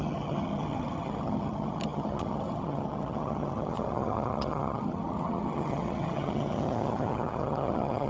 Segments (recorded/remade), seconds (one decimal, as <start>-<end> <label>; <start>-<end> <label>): 0.0-8.1 remade